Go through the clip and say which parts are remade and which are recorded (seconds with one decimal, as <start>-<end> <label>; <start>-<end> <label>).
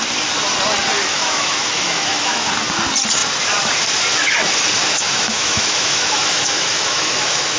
0.0-1.1 recorded; 1.1-2.5 remade; 2.5-4.8 recorded; 4.8-7.6 remade